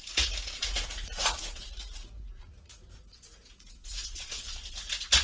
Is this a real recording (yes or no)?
no